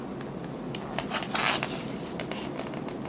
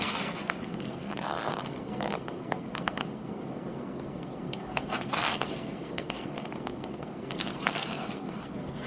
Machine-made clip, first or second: second